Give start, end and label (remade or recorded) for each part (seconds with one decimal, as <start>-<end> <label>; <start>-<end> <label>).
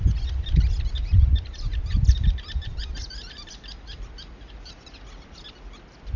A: 0.0-1.0 recorded; 1.0-1.7 remade; 1.7-6.2 recorded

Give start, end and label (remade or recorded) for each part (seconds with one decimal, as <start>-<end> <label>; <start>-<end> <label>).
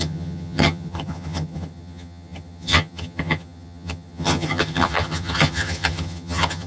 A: 0.0-6.7 remade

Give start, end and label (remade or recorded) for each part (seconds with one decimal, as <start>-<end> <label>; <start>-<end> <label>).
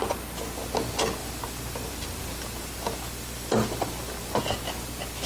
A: 0.0-1.2 recorded; 1.2-4.4 remade; 4.4-5.3 recorded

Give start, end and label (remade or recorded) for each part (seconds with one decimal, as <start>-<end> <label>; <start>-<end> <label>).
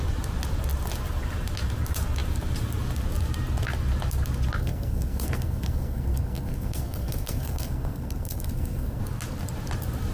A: 0.0-4.6 recorded; 4.6-9.0 remade; 9.0-10.1 recorded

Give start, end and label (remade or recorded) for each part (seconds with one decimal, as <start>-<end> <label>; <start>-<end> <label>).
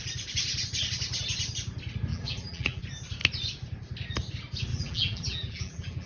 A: 0.0-2.1 recorded; 2.1-2.8 remade; 2.8-4.7 recorded; 4.7-6.1 remade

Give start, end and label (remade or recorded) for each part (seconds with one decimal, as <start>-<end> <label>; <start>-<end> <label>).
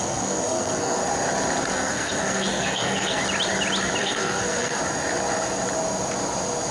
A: 0.0-1.0 remade; 1.0-1.7 recorded; 1.7-3.2 remade; 3.2-4.0 recorded; 4.0-4.8 remade; 4.8-6.7 recorded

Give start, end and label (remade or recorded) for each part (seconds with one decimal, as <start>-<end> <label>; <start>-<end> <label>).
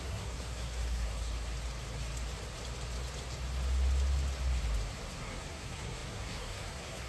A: 0.0-1.3 remade; 1.3-5.1 recorded; 5.1-7.1 remade